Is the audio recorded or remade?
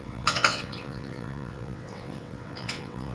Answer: remade